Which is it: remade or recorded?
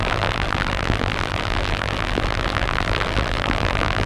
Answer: remade